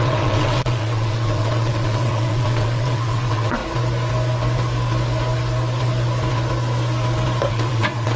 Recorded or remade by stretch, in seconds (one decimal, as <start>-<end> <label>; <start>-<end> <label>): 0.0-3.6 remade; 3.6-7.5 recorded; 7.5-8.2 remade